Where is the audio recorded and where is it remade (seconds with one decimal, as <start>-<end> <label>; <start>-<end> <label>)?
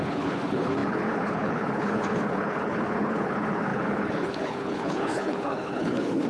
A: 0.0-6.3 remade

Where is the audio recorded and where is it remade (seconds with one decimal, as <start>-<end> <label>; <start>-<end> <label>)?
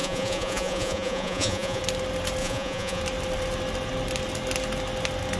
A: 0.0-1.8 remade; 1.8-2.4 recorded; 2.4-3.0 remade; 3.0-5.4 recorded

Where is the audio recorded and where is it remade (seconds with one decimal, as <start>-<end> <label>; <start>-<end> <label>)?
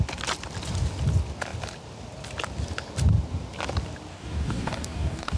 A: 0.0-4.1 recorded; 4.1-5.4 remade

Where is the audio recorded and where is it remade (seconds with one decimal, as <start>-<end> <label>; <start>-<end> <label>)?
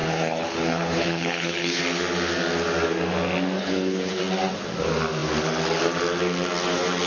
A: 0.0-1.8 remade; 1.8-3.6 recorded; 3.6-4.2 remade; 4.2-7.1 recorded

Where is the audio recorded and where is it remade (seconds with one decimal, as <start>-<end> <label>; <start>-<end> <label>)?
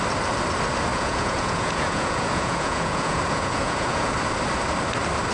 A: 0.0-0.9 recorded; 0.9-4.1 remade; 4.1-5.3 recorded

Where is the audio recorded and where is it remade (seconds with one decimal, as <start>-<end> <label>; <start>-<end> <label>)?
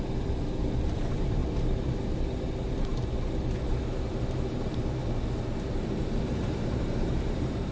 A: 0.0-1.4 remade; 1.4-4.5 recorded; 4.5-5.0 remade; 5.0-6.3 recorded; 6.3-7.7 remade